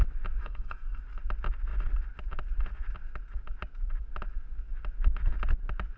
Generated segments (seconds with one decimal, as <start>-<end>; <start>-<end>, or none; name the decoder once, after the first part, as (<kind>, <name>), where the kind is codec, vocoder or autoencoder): 0.4-1.0 (codec, SNAC)